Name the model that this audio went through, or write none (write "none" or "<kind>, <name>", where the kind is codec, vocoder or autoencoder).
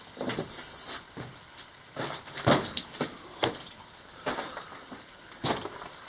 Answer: none